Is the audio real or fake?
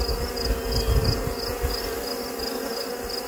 real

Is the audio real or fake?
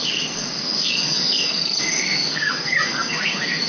fake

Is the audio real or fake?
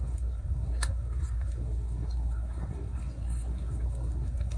fake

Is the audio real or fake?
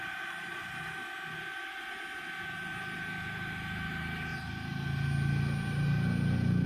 real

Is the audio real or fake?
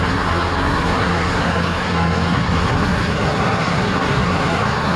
fake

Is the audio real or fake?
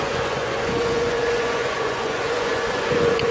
fake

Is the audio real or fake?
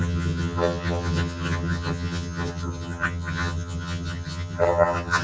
fake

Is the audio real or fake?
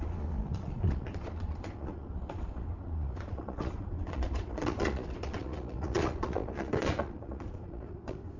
fake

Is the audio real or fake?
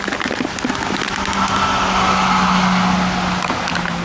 real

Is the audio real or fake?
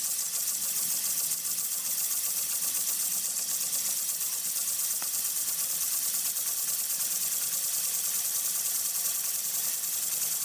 real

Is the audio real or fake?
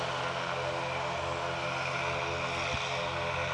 real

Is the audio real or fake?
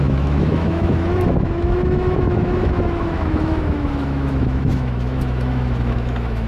fake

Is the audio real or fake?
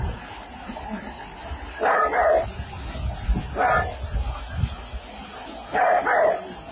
real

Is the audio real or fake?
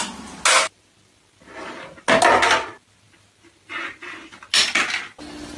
real